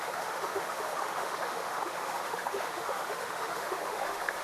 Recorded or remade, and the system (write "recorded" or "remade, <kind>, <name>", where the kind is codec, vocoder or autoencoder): remade, autoencoder, DAC-VAE